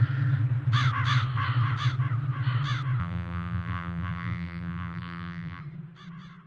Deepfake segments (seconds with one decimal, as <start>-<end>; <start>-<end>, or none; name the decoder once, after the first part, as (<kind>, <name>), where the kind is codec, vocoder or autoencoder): 3.0-5.6 (vocoder, BigVGAN v2)

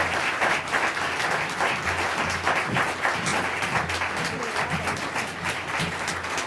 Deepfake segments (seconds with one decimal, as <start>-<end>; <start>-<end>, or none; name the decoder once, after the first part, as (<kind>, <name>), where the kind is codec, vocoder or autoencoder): none

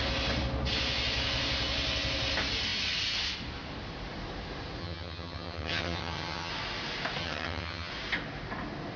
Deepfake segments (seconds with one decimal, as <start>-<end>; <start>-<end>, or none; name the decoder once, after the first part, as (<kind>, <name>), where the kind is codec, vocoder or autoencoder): 4.8-6.5 (vocoder, HiFi-GAN); 7.2-7.9